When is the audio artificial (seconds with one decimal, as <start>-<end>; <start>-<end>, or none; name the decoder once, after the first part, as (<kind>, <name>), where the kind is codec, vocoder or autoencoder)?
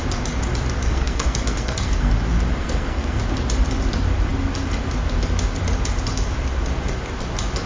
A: 0.8-2.1 (codec, SNAC); 2.6-3.2